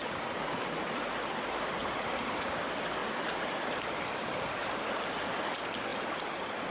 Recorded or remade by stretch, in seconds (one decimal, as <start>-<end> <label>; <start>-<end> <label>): 0.0-1.8 recorded; 1.8-2.6 remade; 2.6-3.0 recorded; 3.0-3.8 remade; 3.8-5.9 recorded; 5.9-6.7 remade